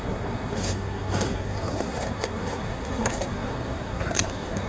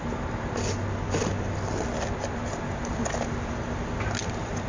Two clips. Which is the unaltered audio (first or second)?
second